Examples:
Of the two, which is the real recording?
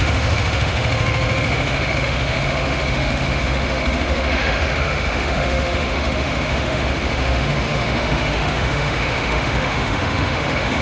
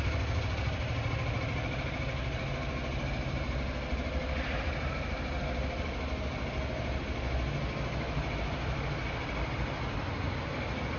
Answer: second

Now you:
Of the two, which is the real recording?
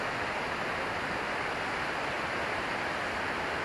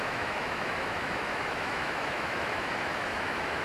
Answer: first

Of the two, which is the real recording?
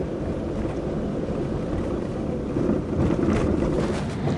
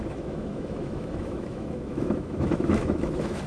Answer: first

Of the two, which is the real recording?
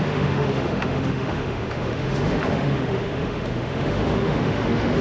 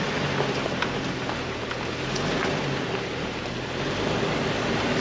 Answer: second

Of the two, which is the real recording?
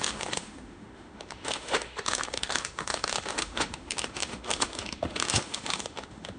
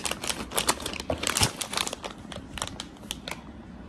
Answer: second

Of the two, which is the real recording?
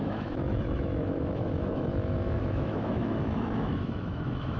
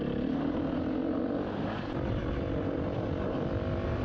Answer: second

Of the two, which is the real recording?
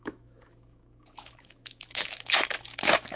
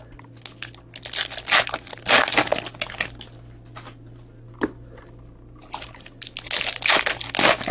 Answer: second